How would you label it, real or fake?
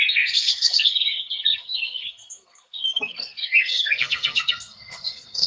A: fake